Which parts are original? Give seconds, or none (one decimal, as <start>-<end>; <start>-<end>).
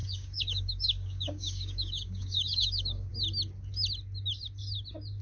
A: 3.1-5.2